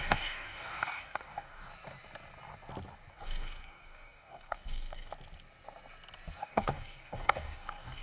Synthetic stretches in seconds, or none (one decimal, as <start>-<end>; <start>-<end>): 0.0-1.7; 3.1-5.1; 6.4-8.0